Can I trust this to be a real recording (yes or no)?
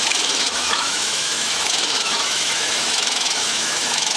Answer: no